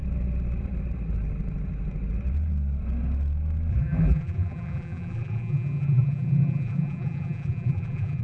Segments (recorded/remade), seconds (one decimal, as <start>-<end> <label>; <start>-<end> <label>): 0.0-3.7 recorded; 3.7-8.2 remade